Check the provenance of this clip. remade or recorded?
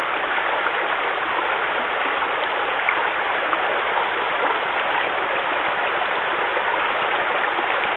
recorded